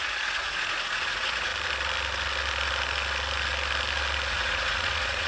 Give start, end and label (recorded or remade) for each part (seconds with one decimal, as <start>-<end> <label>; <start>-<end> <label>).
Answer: 0.0-1.5 remade; 1.5-4.3 recorded; 4.3-5.3 remade